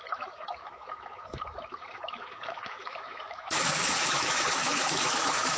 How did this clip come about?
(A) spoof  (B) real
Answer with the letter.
A